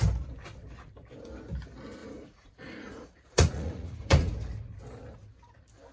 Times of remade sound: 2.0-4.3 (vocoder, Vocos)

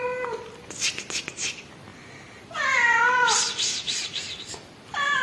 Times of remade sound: none

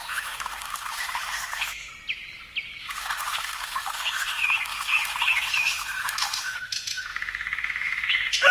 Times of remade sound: 0.0-1.9 (autoencoder, DAC-VAE); 2.8-8.5

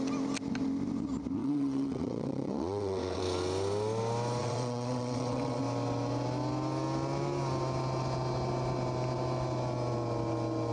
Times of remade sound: 1.4-3.2 (vocoder, WaveNeXt); 4.4-5.6

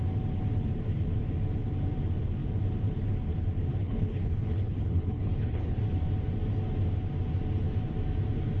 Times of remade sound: 3.7-5.8 (codec, HILCodec)

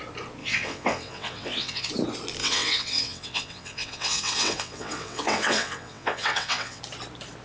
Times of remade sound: 0.4-1.9 (vocoder, WaveNeXt); 2.4-6.8

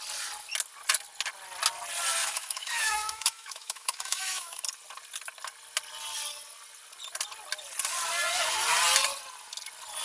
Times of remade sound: 2.2-4.6 (autoencoder, DAC-VAE)

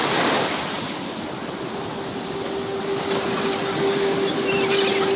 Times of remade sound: none